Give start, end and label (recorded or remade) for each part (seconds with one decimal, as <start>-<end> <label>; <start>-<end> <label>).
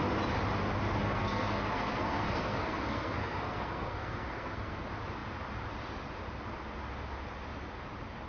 0.0-1.0 recorded; 1.0-4.8 remade; 4.8-8.3 recorded